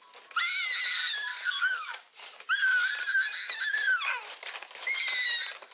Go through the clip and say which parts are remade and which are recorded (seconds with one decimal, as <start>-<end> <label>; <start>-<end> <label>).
0.0-1.3 recorded; 1.3-2.1 remade; 2.1-5.7 recorded